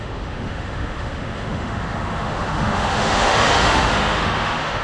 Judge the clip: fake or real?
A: fake